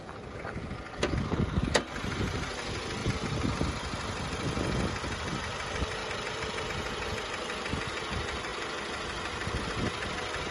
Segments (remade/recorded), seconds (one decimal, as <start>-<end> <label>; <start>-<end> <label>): 0.0-10.5 recorded